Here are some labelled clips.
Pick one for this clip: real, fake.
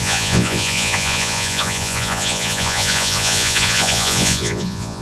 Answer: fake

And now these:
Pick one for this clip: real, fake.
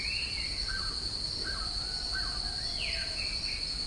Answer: real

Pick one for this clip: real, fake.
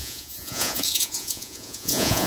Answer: fake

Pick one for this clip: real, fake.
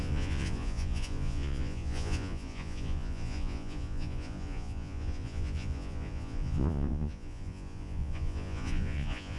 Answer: fake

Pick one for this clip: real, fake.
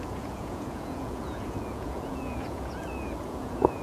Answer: fake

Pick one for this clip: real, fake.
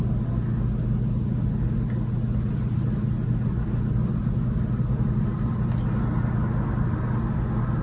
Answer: real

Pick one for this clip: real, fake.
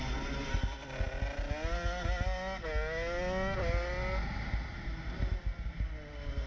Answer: real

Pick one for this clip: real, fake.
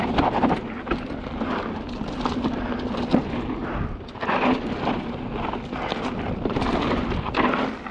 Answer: real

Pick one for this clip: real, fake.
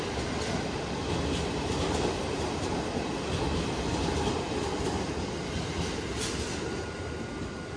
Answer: real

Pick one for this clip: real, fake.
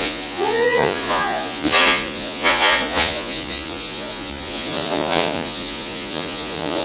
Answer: fake